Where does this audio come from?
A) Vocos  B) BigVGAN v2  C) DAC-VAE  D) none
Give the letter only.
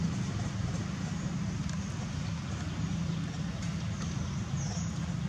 D